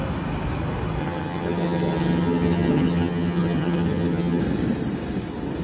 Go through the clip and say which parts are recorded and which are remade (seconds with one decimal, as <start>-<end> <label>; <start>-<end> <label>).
0.0-1.0 recorded; 1.0-4.4 remade; 4.4-5.6 recorded